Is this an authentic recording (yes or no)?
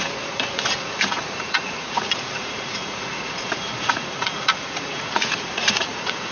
no